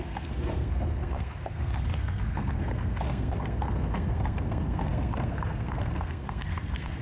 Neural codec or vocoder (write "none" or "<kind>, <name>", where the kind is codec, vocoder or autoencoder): codec, SNAC